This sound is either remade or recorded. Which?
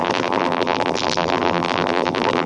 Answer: remade